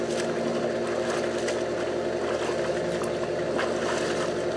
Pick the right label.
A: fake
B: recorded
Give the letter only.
B